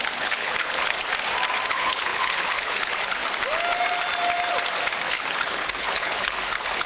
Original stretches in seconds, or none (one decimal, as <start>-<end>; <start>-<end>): 1.1-1.7; 3.2-5.1